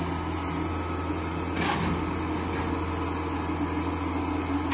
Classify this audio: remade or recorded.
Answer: recorded